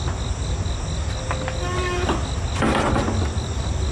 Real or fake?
real